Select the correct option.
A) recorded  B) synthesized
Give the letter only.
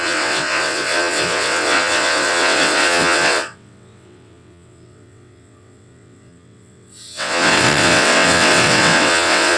B